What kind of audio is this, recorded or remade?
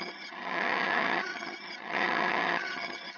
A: remade